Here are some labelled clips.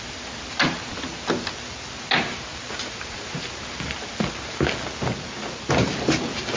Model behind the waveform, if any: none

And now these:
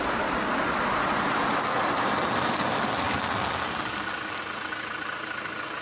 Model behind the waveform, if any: none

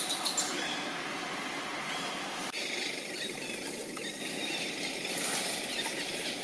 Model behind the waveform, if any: none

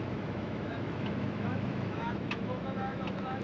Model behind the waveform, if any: autoencoder, DAC-VAE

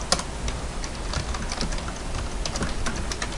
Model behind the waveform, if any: none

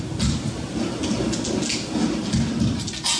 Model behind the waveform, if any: none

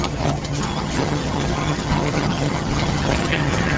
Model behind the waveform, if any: vocoder, HiFi-GAN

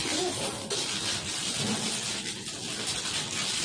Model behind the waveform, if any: none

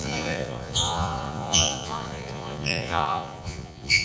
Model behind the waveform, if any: vocoder, Vocos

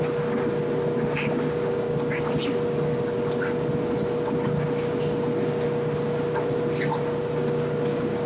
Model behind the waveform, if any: none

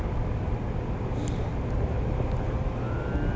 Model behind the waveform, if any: none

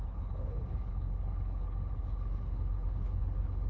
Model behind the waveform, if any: codec, HILCodec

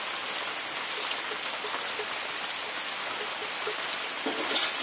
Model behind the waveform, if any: none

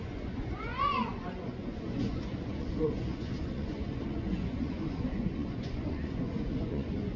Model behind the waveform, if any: vocoder, Vocos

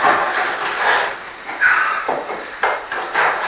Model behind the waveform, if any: vocoder, BigVGAN v2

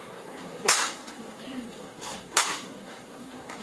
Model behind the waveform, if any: codec, SNAC